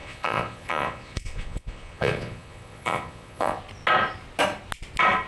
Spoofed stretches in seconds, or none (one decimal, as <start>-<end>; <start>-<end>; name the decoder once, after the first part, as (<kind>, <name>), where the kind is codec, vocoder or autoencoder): 0.0-3.6 (vocoder, Vocos)